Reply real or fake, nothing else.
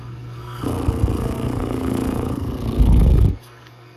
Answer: fake